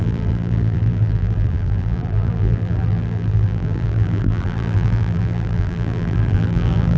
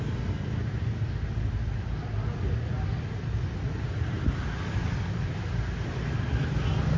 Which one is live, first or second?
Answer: second